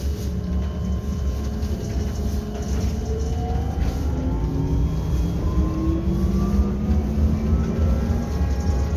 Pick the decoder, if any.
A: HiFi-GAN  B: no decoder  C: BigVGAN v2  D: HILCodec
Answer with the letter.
B